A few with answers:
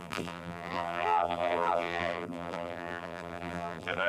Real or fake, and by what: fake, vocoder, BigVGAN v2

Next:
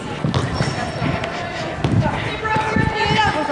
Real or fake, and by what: real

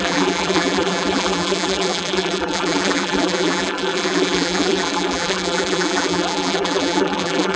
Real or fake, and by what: fake, vocoder, BigVGAN v2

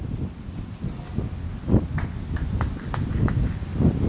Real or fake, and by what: real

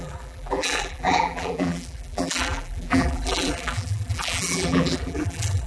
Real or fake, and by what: fake, vocoder, BigVGAN v2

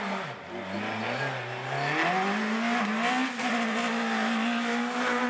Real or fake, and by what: real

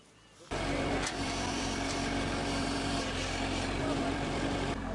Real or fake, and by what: fake, vocoder, BigVGAN v2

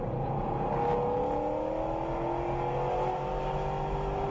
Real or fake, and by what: real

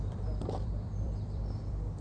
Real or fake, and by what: fake, vocoder, BigVGAN v2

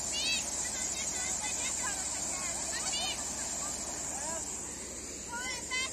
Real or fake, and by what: real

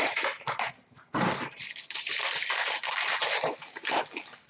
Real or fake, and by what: fake, vocoder, BigVGAN v2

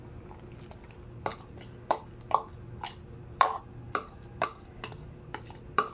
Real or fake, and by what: fake, vocoder, BigVGAN v2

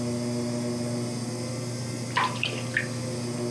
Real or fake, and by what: real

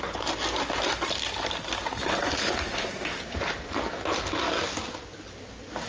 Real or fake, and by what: real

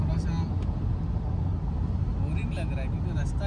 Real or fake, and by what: real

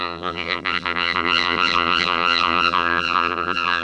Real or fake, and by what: fake, vocoder, BigVGAN v2